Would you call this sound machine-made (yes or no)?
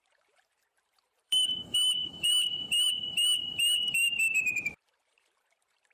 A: yes